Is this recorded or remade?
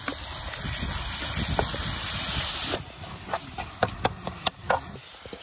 recorded